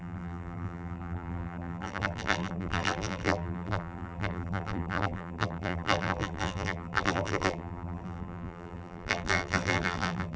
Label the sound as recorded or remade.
remade